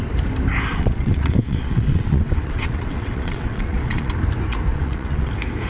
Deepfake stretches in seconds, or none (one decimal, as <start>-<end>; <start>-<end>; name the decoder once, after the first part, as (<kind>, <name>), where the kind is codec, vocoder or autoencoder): 0.7-4.1 (vocoder, WaveNeXt); 4.7-5.3